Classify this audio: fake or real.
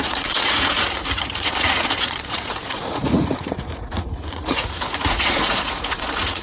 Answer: fake